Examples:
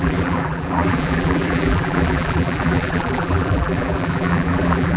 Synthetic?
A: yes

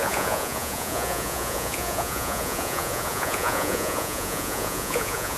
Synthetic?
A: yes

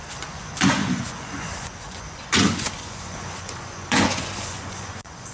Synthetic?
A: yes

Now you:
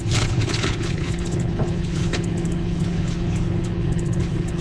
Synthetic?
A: yes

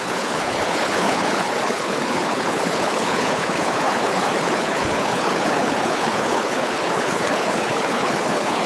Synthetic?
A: yes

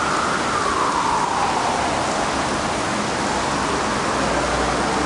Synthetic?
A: no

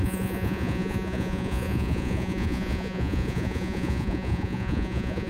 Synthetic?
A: yes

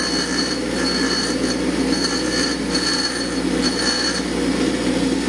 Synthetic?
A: no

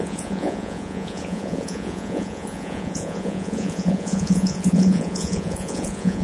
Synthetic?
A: yes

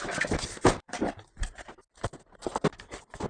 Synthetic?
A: no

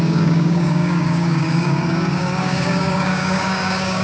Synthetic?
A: yes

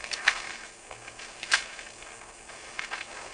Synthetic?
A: yes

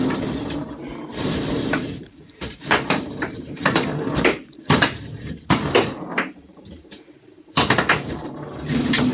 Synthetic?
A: yes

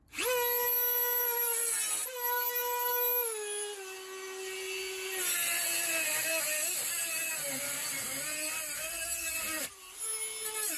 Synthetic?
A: no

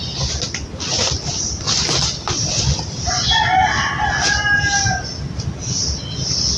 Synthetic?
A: no